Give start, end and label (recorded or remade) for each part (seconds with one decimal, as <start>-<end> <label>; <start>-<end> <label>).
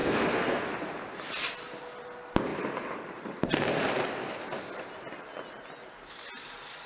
0.0-0.6 remade; 0.6-6.9 recorded